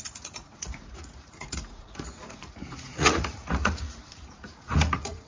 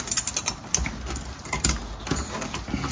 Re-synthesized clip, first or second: first